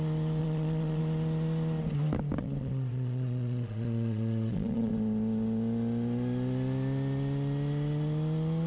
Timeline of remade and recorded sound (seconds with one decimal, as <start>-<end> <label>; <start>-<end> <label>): 0.0-0.4 recorded; 0.4-1.0 remade; 1.0-2.4 recorded; 2.4-4.9 remade; 4.9-8.7 recorded